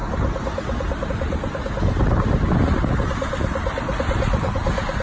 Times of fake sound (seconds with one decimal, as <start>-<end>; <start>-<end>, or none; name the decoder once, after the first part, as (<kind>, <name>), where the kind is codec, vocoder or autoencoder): none

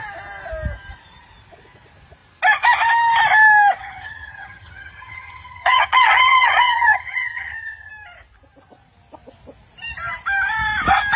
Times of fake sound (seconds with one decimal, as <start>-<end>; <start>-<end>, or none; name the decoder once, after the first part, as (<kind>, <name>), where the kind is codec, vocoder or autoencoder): 3.8-7.9 (vocoder, HiFi-GAN)

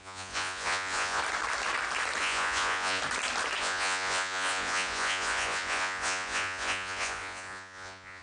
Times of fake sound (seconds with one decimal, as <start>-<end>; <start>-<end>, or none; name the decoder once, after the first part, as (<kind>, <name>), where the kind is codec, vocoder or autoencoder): 0.0-1.2 (vocoder, Vocos); 2.2-3.0; 3.6-8.2

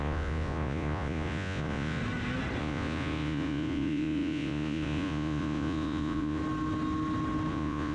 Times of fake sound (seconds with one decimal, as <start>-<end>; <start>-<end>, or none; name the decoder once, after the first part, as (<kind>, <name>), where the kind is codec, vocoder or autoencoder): 0.0-2.0 (vocoder, Vocos); 2.6-6.4; 7.5-7.9